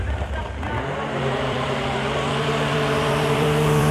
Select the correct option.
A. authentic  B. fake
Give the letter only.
B